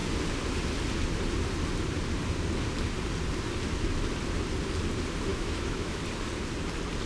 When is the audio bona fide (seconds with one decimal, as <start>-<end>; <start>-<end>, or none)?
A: 0.0-5.3; 6.0-7.1